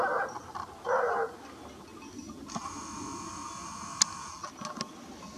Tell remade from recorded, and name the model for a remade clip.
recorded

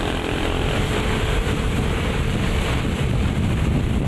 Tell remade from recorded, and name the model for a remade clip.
remade, vocoder, BigVGAN v2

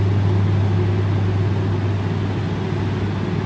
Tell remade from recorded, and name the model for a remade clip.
recorded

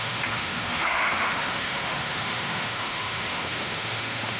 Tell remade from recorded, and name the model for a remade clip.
remade, autoencoder, DAC-VAE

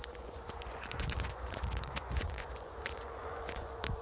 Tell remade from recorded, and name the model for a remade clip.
remade, vocoder, Vocos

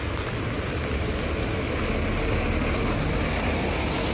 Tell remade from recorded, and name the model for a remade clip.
recorded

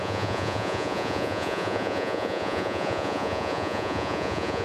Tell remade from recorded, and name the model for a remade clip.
remade, vocoder, Vocos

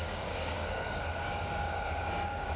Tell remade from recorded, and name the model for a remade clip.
remade, codec, DAC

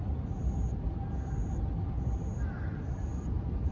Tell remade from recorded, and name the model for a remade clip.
recorded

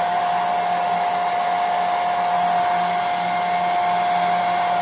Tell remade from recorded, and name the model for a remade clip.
recorded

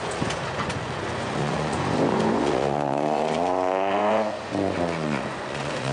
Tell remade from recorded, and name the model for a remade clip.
remade, vocoder, Vocos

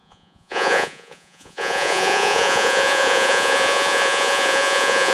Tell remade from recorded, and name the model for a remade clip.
remade, vocoder, Vocos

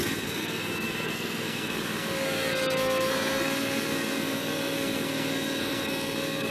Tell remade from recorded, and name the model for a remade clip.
remade, codec, SNAC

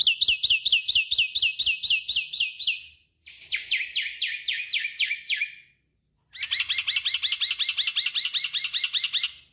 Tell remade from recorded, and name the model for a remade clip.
recorded